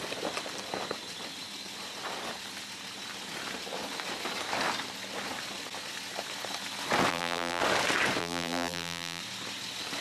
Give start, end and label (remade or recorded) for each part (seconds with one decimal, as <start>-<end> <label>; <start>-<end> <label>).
0.0-7.1 recorded; 7.1-7.6 remade; 7.6-8.2 recorded; 8.2-9.2 remade; 9.2-10.0 recorded